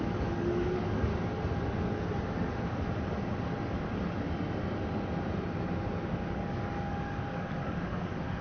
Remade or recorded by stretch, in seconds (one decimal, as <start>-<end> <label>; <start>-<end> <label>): 0.0-1.1 remade; 1.1-6.1 recorded; 6.1-8.4 remade